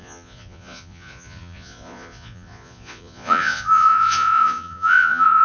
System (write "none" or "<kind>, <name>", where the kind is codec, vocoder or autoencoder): vocoder, Vocos